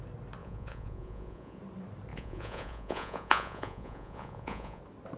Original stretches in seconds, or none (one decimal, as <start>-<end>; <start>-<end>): 0.0-0.4; 1.6-2.1; 4.8-5.2